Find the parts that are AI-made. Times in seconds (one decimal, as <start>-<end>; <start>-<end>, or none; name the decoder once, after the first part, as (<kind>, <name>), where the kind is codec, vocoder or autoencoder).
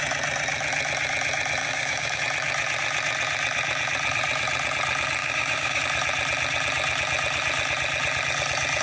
1.6-2.2 (codec, DAC); 5.2-5.8